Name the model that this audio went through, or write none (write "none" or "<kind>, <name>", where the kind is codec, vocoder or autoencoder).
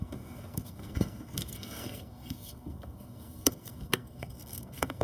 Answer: codec, SNAC